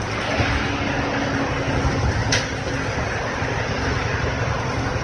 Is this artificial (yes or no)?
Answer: no